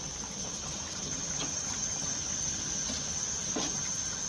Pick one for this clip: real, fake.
real